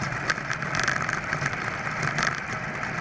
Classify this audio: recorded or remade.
recorded